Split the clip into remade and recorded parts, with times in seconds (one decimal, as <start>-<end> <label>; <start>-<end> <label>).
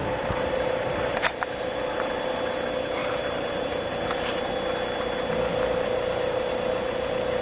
0.0-0.9 remade; 0.9-1.6 recorded; 1.6-2.2 remade; 2.2-3.0 recorded; 3.0-4.5 remade; 4.5-7.4 recorded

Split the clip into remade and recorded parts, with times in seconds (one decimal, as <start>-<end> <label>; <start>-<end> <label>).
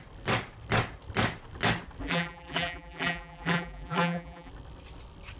0.0-2.0 recorded; 2.0-4.5 remade; 4.5-5.4 recorded